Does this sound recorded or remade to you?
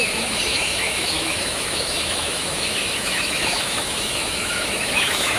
remade